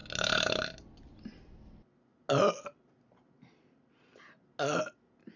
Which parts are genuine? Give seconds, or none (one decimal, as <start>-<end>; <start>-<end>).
0.0-5.4